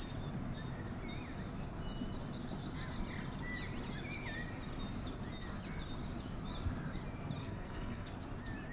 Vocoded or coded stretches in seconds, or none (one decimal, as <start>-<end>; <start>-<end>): 7.4-8.1